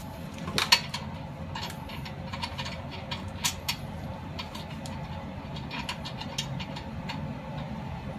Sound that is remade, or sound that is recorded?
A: recorded